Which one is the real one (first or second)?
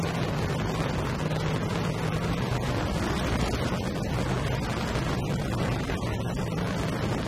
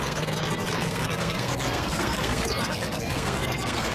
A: first